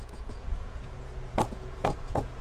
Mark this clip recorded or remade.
remade